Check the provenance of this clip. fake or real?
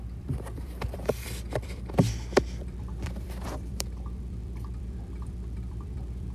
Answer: fake